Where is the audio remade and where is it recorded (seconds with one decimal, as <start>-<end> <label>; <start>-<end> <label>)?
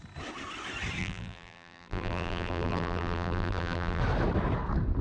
0.0-1.0 recorded; 1.0-4.0 remade; 4.0-5.0 recorded